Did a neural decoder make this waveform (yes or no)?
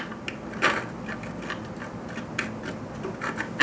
no